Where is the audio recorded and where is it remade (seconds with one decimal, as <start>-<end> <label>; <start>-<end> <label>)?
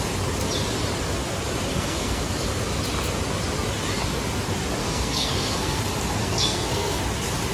0.0-1.7 recorded; 1.7-2.3 remade; 2.3-4.8 recorded; 4.8-5.8 remade; 5.8-6.2 recorded; 6.2-7.0 remade; 7.0-7.5 recorded